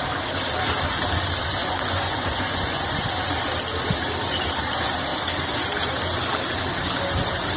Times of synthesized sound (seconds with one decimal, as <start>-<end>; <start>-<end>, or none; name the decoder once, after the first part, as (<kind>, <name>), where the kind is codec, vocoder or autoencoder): 1.6-2.9 (vocoder, Vocos)